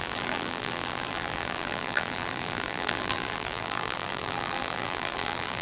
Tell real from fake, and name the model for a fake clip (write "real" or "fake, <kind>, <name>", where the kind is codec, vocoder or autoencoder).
fake, vocoder, BigVGAN v2